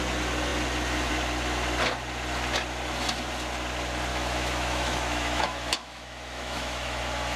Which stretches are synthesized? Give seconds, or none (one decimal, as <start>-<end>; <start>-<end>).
4.1-7.0

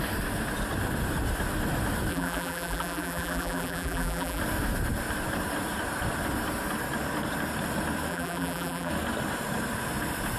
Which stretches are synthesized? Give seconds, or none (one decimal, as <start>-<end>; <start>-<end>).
2.1-4.4; 8.1-8.9

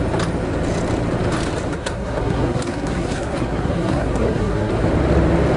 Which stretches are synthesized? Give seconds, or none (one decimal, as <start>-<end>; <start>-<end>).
1.7-4.7